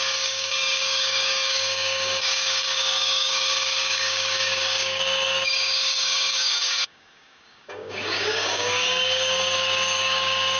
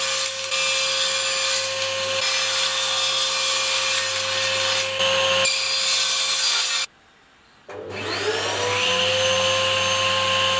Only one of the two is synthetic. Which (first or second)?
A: first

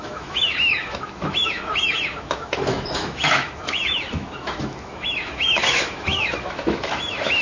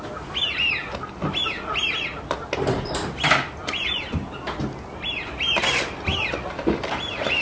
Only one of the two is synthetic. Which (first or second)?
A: first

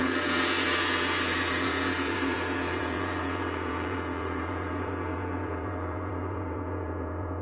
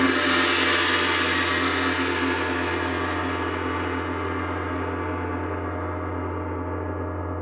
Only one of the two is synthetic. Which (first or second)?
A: first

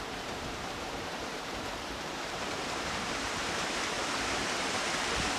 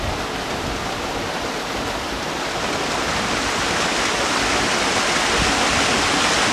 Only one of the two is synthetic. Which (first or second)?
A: first